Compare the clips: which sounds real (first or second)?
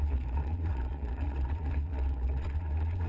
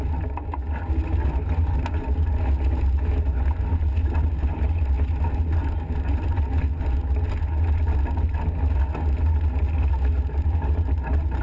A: second